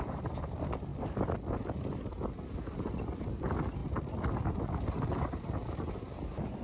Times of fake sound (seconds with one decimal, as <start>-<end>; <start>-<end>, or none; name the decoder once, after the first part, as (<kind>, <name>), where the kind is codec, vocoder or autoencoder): none